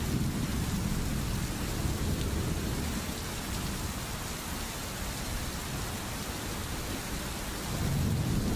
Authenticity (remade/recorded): recorded